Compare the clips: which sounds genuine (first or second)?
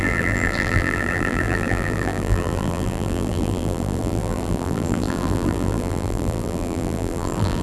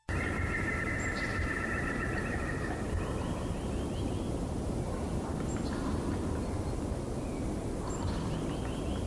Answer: second